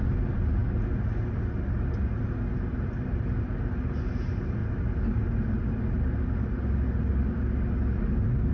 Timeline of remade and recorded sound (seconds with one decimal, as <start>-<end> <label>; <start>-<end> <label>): 0.0-8.5 recorded